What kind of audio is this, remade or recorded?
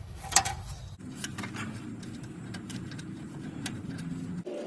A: recorded